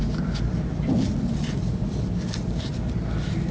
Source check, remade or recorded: recorded